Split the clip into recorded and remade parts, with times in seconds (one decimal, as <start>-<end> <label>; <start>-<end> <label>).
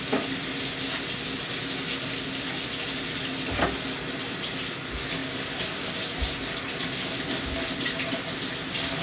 0.0-9.0 recorded